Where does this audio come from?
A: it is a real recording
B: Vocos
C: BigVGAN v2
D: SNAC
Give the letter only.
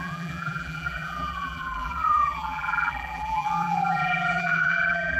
C